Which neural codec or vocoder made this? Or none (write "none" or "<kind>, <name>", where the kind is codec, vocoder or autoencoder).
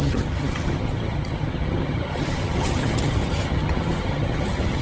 vocoder, HiFi-GAN